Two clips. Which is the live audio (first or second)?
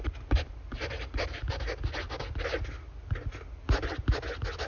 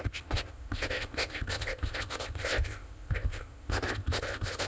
first